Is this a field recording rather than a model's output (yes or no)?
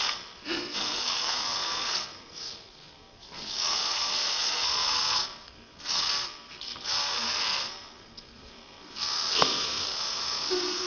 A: no